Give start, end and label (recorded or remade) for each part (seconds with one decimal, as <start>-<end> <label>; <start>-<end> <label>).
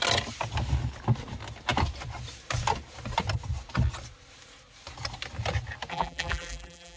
0.0-5.9 recorded; 5.9-7.0 remade